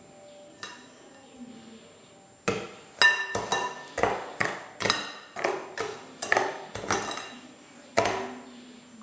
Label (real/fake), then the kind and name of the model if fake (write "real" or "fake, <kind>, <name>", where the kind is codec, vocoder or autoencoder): real